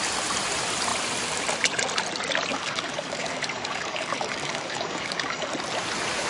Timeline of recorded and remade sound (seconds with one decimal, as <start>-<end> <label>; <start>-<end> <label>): 0.0-2.5 recorded; 2.5-5.5 remade; 5.5-6.3 recorded